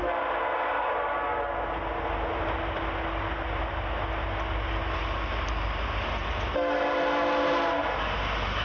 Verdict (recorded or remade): recorded